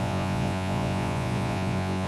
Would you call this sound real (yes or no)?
no